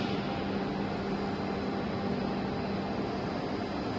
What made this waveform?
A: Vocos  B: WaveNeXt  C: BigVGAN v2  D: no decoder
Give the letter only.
D